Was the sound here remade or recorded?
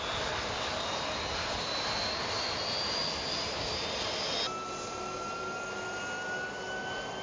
recorded